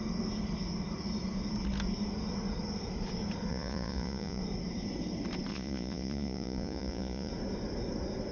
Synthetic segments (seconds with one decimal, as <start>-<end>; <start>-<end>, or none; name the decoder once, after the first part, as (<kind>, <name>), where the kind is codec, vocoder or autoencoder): 3.5-4.4 (vocoder, Vocos); 5.5-7.3